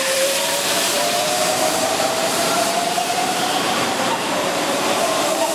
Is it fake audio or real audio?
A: fake